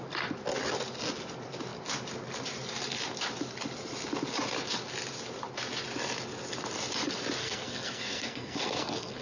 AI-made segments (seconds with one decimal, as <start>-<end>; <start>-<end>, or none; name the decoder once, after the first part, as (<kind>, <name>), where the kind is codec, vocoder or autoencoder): 7.4-9.2 (codec, SNAC)